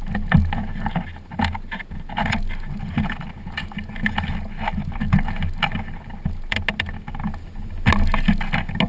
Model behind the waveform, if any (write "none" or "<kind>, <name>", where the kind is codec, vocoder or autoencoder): none